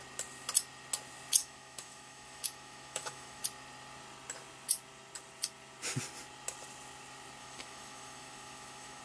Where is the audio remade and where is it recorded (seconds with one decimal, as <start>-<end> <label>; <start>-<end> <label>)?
0.0-1.4 recorded; 1.4-3.4 remade; 3.4-7.4 recorded; 7.4-9.0 remade